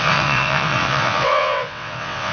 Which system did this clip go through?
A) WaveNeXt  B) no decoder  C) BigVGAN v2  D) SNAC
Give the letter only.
A